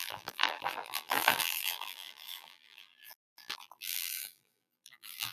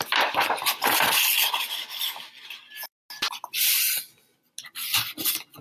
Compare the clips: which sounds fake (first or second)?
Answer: first